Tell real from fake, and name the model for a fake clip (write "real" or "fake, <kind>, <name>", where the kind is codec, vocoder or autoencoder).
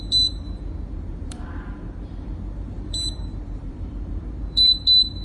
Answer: fake, vocoder, BigVGAN v2